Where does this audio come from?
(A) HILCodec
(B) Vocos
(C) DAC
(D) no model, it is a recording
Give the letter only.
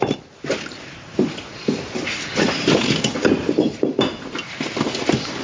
D